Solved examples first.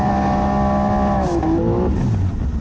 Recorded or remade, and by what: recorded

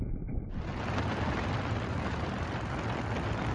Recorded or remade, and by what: recorded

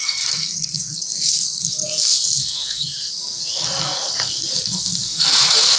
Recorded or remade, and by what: remade, codec, SNAC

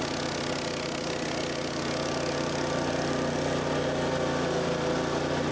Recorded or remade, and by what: recorded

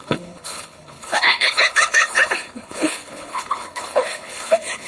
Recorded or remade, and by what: remade, codec, HILCodec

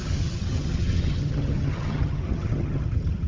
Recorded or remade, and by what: remade, vocoder, HiFi-GAN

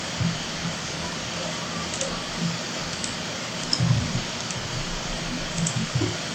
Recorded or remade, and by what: remade, codec, DAC